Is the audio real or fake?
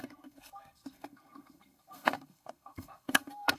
fake